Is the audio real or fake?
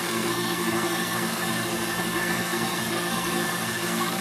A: fake